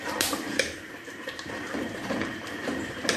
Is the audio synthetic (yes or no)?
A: yes